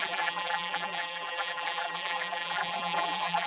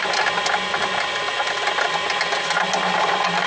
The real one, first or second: second